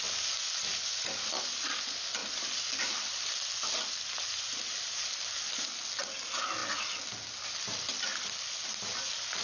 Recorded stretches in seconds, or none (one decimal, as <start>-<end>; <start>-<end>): 0.0-0.6; 1.6-2.2; 3.3-9.4